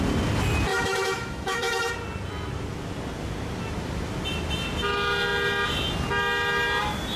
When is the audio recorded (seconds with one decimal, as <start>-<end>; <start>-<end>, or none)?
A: 0.0-0.7; 1.9-7.2